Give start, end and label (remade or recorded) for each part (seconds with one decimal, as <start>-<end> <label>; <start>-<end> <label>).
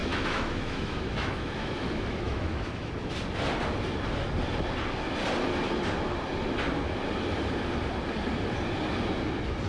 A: 0.0-2.9 remade; 2.9-9.7 recorded